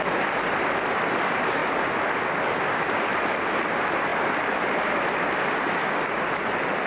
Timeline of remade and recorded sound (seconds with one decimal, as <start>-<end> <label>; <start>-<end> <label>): 0.0-6.9 recorded